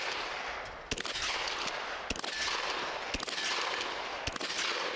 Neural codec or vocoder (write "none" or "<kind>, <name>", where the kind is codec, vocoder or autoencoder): none